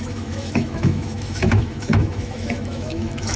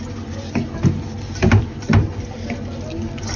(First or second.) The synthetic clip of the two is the first